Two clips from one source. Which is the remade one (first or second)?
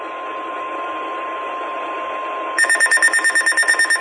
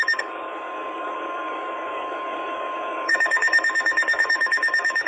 second